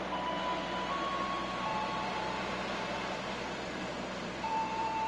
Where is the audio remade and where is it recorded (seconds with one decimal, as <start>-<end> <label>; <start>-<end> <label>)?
0.0-1.7 recorded; 1.7-5.1 remade